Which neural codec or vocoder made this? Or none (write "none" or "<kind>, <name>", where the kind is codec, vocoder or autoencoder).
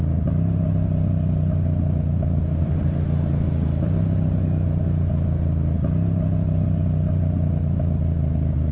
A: none